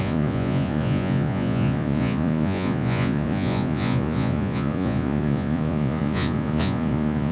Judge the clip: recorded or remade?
remade